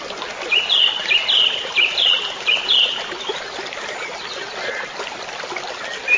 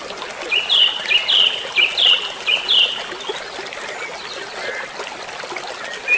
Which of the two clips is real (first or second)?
second